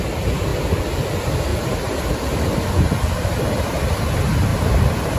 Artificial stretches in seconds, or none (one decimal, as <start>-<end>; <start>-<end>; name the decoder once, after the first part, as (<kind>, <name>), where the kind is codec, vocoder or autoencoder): 1.5-2.4 (vocoder, BigVGAN v2); 4.5-5.2